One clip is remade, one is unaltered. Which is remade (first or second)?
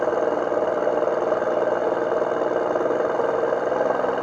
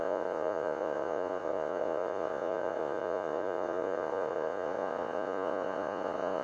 second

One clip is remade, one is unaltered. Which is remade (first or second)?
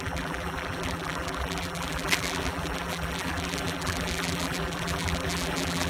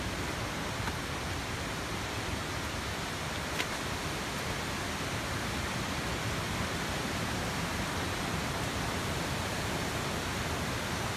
first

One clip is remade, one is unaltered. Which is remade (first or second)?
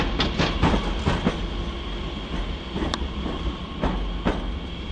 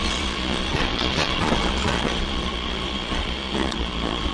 second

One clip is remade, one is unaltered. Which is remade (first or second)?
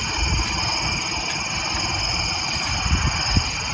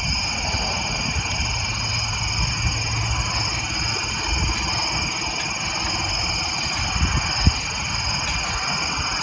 first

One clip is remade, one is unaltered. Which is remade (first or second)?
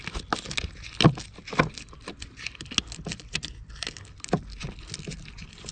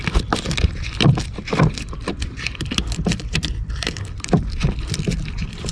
second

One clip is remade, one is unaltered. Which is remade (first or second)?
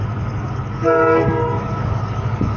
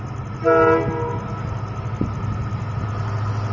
first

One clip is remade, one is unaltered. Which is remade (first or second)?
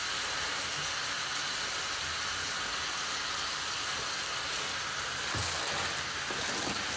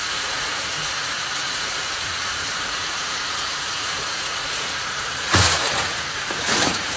second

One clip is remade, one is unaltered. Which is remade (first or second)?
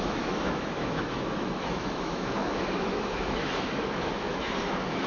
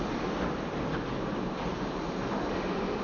first